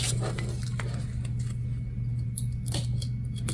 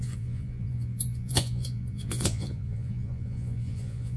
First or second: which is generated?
second